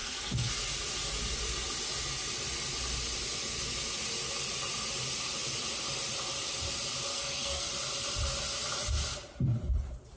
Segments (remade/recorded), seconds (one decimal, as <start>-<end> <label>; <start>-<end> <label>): 0.0-0.5 remade; 0.5-7.1 recorded; 7.1-7.7 remade; 7.7-10.2 recorded